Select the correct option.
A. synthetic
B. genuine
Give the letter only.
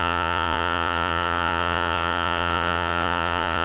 A